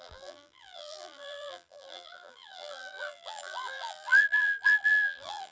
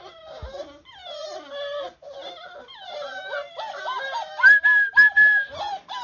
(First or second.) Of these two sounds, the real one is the second